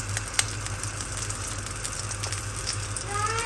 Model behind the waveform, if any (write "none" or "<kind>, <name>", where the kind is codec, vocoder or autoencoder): none